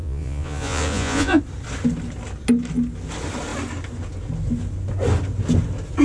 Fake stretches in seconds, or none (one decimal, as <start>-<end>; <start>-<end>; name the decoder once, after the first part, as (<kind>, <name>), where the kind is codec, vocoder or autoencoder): 0.0-1.4 (vocoder, Vocos)